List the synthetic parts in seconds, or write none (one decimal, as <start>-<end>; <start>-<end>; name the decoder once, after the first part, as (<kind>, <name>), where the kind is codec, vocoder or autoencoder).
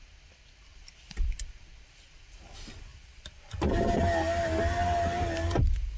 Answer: 2.9-4.0 (vocoder, BigVGAN v2)